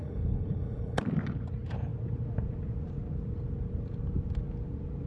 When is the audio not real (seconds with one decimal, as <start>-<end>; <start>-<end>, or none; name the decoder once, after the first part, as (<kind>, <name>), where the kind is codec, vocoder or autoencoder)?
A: 0.0-1.0 (codec, HILCodec)